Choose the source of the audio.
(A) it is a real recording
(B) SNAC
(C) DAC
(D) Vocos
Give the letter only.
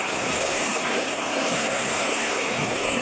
B